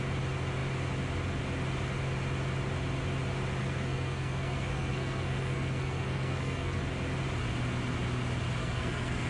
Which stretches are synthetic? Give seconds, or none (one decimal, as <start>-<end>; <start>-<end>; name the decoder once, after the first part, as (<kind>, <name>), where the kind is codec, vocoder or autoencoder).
3.6-6.8 (codec, SNAC); 8.6-9.3